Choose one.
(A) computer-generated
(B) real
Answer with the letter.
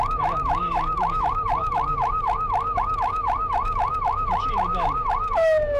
A